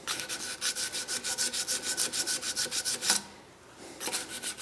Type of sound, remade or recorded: recorded